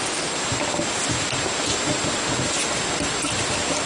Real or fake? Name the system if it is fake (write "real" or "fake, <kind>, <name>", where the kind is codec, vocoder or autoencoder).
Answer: real